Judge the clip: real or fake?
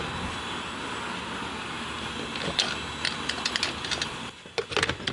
real